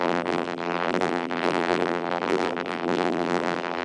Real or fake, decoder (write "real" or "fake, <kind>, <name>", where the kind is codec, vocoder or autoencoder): fake, vocoder, BigVGAN v2